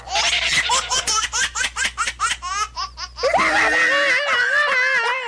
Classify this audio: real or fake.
real